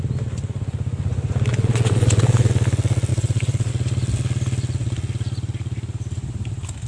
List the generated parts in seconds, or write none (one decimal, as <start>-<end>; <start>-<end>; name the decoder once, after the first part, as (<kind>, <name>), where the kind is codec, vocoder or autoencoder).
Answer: 1.5-2.5 (vocoder, Vocos); 3.1-3.7